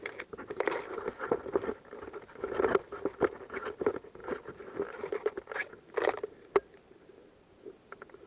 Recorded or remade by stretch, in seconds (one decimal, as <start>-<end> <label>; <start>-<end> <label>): 0.0-8.3 recorded